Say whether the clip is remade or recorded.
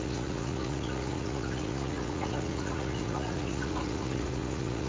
remade